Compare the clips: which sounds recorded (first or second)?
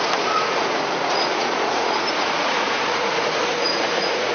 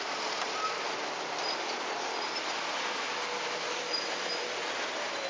second